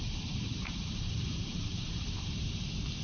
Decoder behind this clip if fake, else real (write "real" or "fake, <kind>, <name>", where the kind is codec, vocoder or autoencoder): fake, vocoder, BigVGAN v2